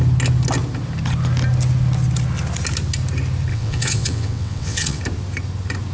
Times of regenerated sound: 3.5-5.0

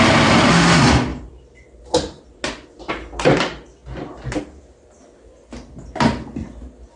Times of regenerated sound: none

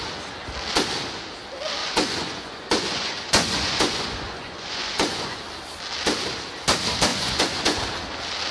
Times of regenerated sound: 1.8-5.4; 7.1-7.8

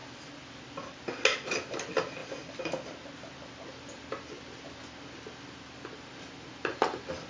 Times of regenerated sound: none

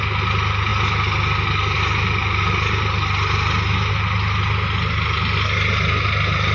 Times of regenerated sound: none

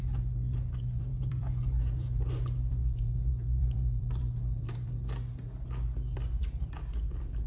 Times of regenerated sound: 1.1-2.3; 2.8-4.1